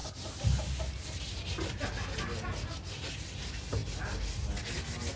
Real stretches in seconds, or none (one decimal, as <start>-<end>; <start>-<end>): 0.0-5.2